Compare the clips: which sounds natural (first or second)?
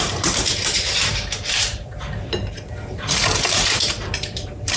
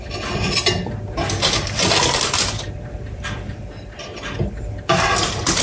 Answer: second